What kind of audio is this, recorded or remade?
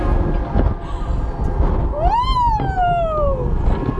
recorded